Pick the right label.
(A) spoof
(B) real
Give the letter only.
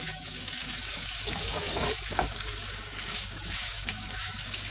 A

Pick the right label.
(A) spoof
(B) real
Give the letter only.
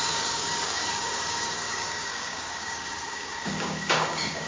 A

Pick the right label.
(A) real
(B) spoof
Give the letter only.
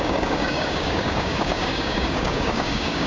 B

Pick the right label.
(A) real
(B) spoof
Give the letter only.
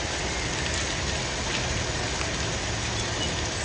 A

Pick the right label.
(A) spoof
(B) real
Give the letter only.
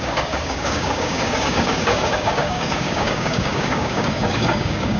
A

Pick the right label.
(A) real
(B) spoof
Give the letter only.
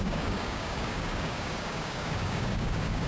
B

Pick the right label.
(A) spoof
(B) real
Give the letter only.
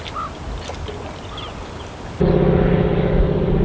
B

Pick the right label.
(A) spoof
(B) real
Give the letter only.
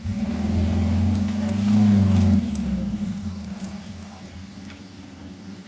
A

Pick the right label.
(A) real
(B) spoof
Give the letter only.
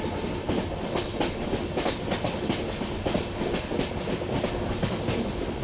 A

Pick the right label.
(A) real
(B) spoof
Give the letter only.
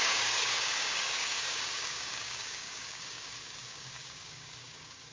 B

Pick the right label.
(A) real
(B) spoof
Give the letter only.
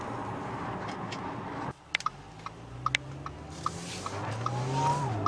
A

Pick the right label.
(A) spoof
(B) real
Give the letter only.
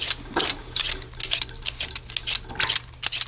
B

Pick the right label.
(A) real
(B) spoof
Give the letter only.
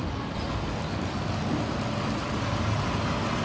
A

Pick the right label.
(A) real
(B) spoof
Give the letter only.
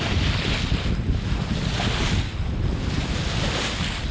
A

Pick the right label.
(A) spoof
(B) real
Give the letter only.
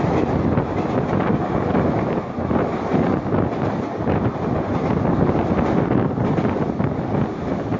B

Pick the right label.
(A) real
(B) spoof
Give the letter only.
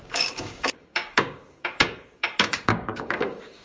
B